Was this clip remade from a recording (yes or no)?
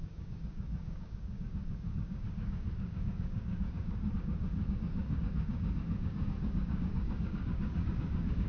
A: yes